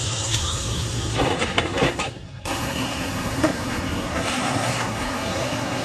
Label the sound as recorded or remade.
remade